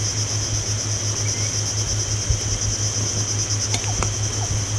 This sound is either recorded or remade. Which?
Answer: recorded